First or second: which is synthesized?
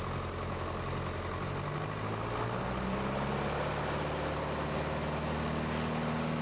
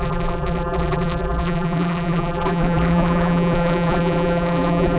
second